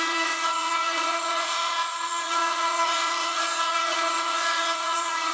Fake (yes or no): yes